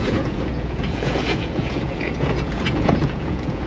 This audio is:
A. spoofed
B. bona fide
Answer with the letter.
A